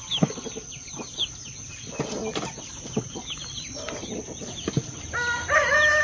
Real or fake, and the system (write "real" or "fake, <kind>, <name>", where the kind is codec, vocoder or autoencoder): real